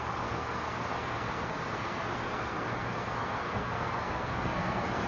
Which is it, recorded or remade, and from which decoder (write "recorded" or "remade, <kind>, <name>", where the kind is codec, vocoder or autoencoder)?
remade, codec, SNAC